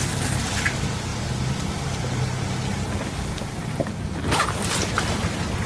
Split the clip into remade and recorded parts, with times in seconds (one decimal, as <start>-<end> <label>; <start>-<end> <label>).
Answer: 0.0-1.1 recorded; 1.1-4.5 remade; 4.5-5.7 recorded